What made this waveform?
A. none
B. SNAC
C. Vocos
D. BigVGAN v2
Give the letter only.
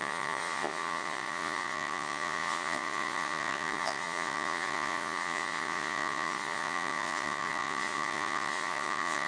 C